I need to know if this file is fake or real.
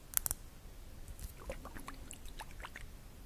real